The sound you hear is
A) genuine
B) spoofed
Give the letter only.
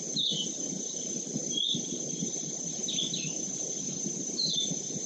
B